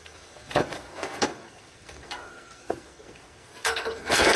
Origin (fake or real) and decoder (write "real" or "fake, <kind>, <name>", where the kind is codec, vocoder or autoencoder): fake, codec, SNAC